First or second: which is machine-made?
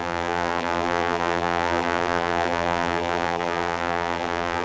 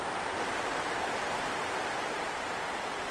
first